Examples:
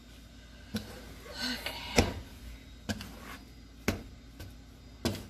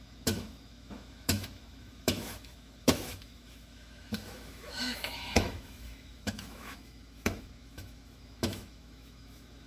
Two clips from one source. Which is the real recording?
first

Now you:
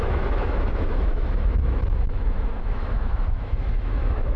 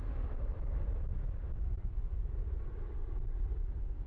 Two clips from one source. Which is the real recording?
second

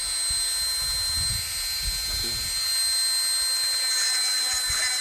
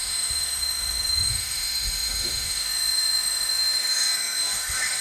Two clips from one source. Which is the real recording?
first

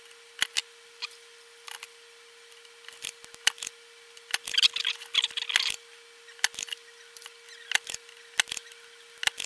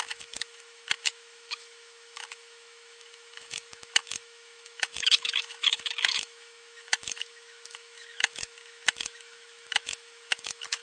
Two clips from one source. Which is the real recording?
first